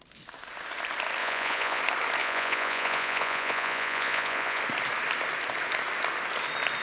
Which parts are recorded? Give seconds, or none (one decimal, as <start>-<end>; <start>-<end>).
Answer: 0.0-1.2; 1.8-2.2; 4.6-6.8